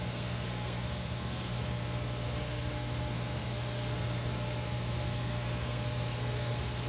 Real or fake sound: fake